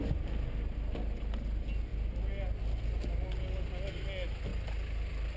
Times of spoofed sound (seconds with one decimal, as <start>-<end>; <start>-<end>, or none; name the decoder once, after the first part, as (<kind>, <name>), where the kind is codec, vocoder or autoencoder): none